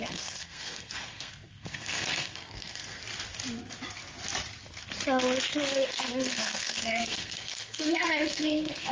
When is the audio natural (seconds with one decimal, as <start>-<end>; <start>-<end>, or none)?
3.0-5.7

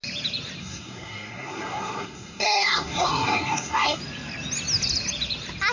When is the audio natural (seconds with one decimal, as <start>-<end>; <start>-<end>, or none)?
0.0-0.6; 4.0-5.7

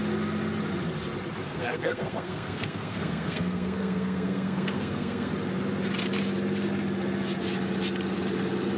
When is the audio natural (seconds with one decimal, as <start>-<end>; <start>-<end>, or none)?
0.0-1.4; 5.3-8.8

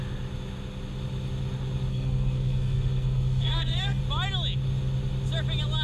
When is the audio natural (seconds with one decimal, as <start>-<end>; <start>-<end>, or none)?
0.0-1.9; 4.0-5.8

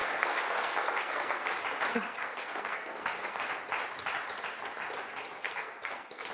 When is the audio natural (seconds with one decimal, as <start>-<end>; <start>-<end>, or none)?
1.5-1.9; 3.5-5.4

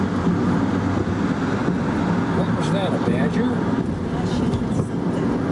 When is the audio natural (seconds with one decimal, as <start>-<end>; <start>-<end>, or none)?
0.0-5.5

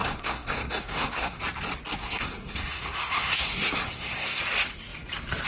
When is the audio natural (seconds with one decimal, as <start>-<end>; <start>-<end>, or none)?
1.4-2.0; 4.4-5.5